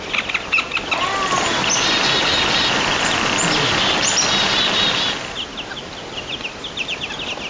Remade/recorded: recorded